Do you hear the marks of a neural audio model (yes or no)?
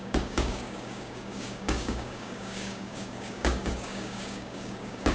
yes